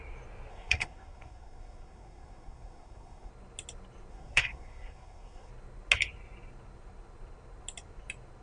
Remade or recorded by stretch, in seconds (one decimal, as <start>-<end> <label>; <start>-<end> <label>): 0.0-0.5 recorded; 0.5-3.3 remade; 3.3-4.1 recorded; 4.1-5.5 remade; 5.5-8.4 recorded

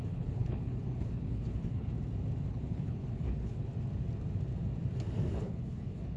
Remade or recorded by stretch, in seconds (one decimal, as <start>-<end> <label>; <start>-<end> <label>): 0.0-1.9 remade; 1.9-2.5 recorded; 2.5-3.7 remade; 3.7-5.3 recorded; 5.3-6.2 remade